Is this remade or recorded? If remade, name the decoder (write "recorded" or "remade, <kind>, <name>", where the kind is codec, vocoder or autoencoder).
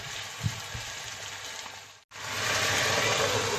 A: recorded